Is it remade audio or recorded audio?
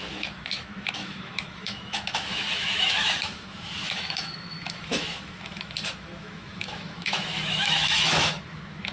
remade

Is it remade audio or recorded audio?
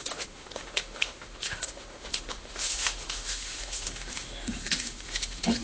remade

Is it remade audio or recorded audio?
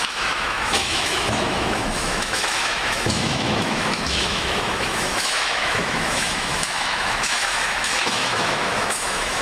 remade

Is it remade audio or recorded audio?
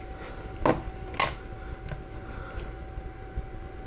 recorded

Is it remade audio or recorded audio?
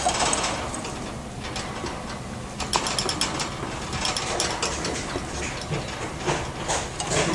recorded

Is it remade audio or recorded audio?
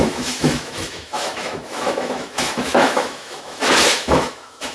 remade